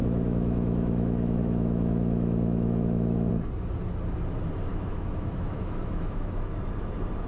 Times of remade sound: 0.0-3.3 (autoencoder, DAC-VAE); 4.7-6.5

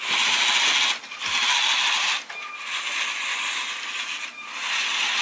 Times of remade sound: none

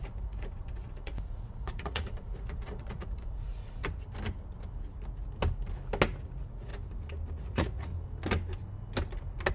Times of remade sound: 0.0-3.8 (vocoder, Vocos); 6.2-6.7; 7.4-7.9